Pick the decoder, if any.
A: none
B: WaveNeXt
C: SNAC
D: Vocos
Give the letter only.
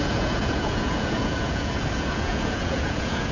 D